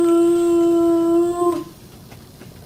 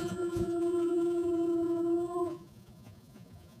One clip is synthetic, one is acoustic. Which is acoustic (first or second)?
first